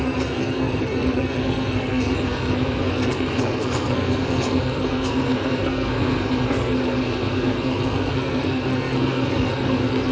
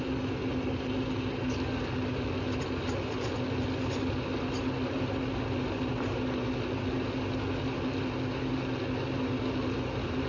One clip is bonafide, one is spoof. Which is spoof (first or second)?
first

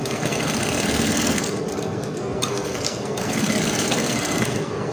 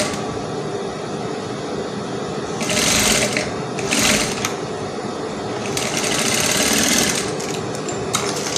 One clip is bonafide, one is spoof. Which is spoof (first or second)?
first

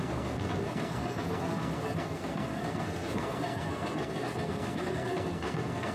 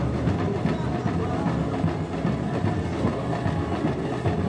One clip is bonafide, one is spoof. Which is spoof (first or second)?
first